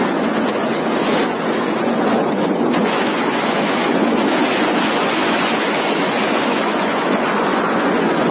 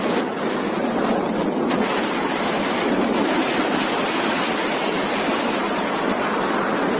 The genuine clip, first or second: second